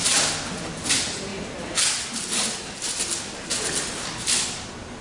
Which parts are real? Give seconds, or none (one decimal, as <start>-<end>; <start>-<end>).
0.0-5.0